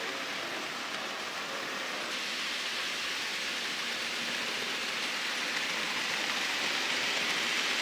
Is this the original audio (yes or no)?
yes